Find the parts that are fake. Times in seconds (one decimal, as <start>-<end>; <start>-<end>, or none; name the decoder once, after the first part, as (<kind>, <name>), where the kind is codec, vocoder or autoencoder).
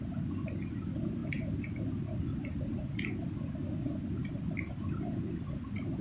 none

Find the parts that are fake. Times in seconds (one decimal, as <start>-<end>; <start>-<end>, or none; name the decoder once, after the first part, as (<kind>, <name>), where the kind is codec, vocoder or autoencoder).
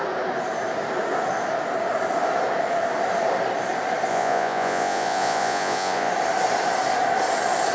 4.1-6.1 (vocoder, Vocos)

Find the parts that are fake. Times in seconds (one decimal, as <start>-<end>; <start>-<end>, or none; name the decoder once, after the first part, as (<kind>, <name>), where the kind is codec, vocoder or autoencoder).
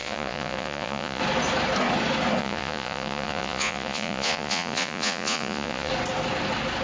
0.0-1.2 (vocoder, Vocos); 2.4-5.9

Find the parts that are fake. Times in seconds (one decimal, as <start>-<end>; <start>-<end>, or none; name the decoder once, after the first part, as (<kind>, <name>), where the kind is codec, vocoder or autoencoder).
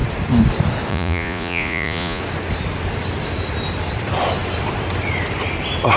0.9-2.2 (vocoder, Vocos)